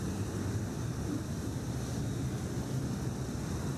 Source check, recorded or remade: recorded